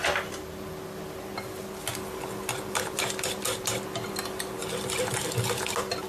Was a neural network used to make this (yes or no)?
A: no